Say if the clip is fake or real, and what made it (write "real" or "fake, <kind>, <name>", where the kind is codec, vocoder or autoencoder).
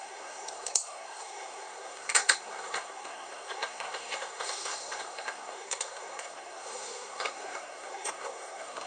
fake, codec, SNAC